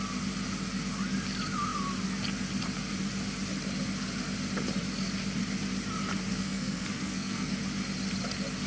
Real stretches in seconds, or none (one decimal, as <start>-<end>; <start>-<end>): 0.0-6.3; 7.5-8.7